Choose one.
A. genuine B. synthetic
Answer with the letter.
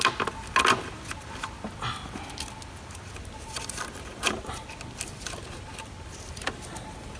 A